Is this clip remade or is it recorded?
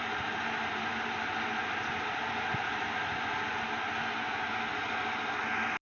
recorded